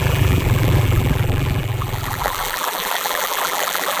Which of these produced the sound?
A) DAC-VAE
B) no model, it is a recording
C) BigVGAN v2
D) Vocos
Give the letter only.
C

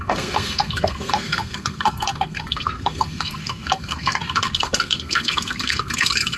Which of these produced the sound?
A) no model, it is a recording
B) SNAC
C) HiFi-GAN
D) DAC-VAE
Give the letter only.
B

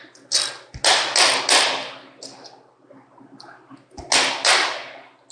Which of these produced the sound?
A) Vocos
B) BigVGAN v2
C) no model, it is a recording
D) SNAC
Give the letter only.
C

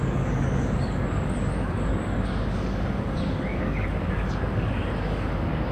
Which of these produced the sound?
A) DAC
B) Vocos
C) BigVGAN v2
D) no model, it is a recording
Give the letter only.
A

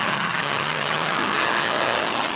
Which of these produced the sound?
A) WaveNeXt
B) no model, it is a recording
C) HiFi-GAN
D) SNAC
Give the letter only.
C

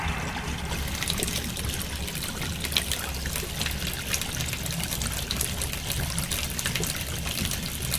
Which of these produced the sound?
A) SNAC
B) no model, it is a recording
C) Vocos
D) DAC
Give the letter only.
B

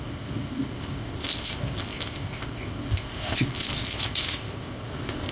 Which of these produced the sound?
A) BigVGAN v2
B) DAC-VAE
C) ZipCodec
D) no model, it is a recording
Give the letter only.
C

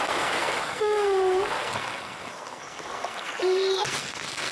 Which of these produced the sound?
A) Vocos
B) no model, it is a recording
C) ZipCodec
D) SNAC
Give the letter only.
D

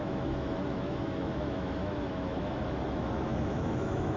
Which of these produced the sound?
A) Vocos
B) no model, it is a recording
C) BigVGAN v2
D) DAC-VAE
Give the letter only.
D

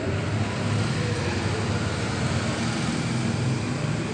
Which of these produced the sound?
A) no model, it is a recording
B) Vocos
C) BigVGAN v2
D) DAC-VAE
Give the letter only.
A